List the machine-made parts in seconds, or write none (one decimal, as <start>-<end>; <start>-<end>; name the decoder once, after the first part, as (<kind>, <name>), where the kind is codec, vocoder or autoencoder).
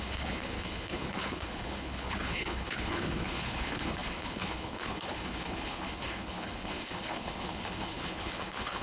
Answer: 0.0-8.8 (codec, HILCodec)